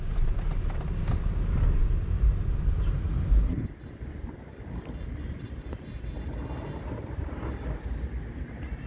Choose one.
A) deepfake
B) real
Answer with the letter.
B